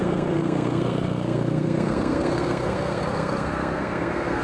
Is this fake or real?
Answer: fake